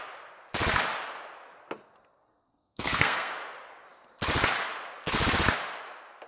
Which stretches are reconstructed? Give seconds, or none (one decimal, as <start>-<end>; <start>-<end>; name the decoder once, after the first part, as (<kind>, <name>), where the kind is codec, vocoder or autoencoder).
2.3-3.3 (codec, SNAC)